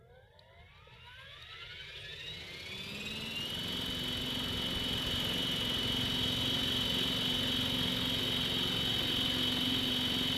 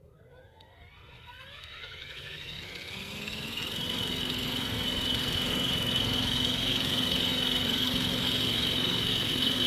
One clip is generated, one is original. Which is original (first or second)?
first